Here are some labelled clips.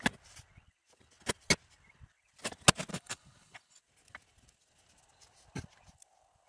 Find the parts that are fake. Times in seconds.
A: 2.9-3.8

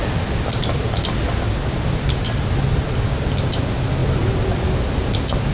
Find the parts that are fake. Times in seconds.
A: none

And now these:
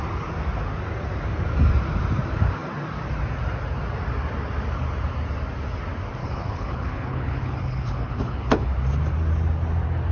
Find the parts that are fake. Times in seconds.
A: 6.2-8.7